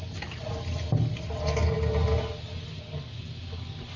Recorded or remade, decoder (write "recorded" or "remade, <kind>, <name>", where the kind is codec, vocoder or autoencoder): recorded